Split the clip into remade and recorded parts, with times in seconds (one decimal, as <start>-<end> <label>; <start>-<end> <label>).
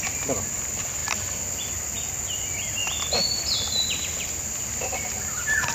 0.0-5.7 recorded